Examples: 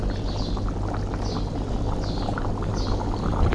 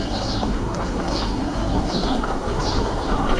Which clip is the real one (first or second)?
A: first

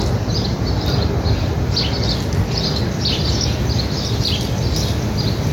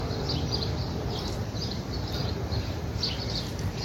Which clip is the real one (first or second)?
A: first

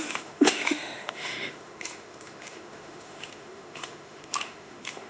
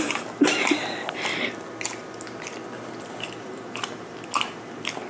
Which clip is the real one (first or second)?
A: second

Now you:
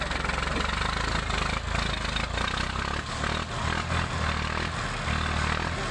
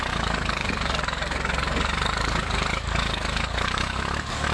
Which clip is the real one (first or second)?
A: first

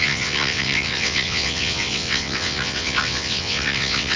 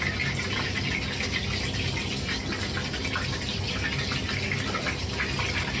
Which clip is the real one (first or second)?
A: second